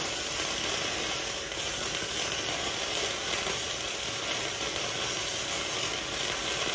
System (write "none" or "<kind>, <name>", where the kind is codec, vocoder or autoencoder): none